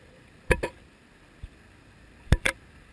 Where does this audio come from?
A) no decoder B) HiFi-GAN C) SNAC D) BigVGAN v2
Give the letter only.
D